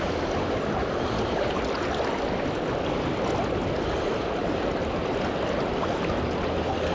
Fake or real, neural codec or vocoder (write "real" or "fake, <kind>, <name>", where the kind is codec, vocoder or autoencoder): real